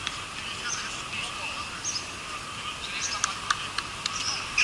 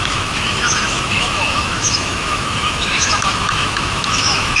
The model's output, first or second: second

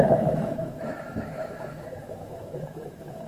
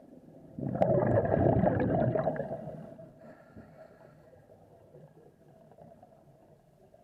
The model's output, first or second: first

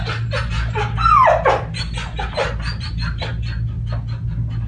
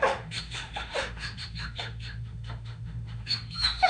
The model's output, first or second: second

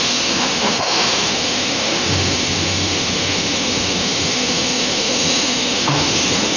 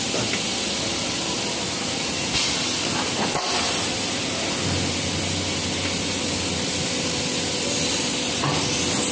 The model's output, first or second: first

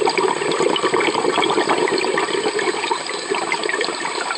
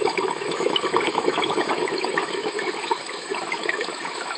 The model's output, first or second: second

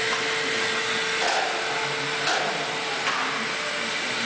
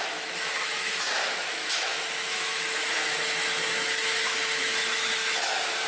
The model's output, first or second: second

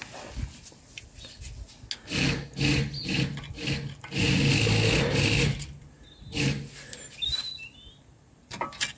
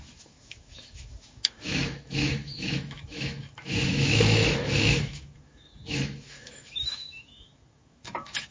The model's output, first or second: second